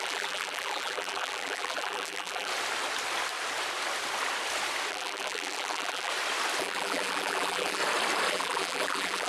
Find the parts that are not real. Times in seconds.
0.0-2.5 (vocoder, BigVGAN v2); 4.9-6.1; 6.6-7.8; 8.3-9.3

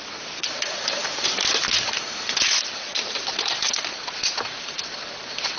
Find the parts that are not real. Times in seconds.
0.0-5.6 (vocoder, BigVGAN v2)